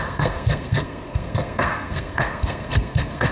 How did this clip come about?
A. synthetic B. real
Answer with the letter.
A